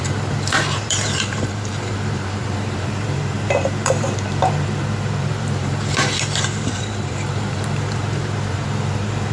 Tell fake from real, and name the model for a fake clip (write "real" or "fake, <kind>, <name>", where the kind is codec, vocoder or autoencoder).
fake, vocoder, BigVGAN v2